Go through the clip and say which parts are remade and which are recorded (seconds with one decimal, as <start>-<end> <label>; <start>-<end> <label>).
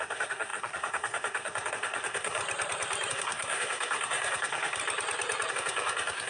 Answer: 0.0-2.4 remade; 2.4-3.1 recorded; 3.1-4.8 remade; 4.8-5.5 recorded; 5.5-6.3 remade